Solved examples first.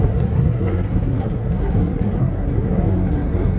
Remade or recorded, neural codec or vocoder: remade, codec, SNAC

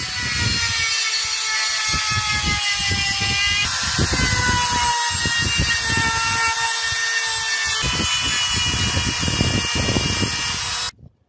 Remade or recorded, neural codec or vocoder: recorded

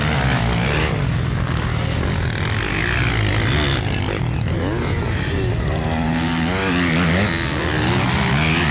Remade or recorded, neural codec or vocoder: recorded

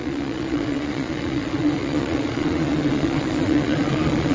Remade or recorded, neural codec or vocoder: remade, vocoder, Vocos